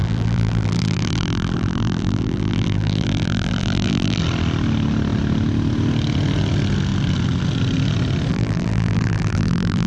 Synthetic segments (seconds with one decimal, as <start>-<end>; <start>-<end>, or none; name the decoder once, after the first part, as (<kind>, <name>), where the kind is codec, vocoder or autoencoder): 0.0-4.2 (vocoder, BigVGAN v2); 8.3-9.9

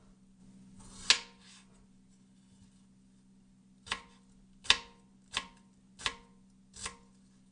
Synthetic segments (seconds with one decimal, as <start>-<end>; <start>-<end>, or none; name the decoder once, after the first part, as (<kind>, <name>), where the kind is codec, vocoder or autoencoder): none

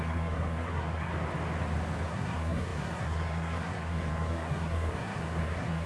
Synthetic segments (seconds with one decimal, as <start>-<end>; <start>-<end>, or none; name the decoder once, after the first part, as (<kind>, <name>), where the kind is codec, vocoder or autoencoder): 0.0-1.1 (codec, SNAC); 2.1-5.9

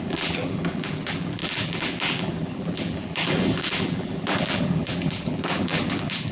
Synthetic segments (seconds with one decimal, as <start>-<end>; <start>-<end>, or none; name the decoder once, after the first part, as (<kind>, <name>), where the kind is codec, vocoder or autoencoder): 0.0-6.3 (vocoder, BigVGAN v2)

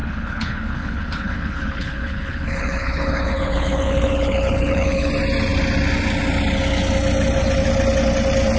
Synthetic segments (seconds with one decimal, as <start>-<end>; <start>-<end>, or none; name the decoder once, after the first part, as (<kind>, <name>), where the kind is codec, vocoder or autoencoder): 0.0-5.1 (codec, HILCodec)

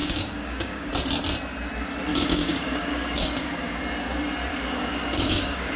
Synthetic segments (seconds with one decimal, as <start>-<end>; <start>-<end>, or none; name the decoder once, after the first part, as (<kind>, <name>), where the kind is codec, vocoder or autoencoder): 0.0-0.9 (codec, DAC); 2.1-3.8; 4.5-5.8

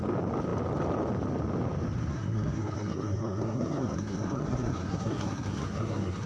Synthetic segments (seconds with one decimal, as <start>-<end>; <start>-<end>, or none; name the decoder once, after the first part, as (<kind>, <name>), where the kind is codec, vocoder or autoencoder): 2.1-6.3 (codec, SNAC)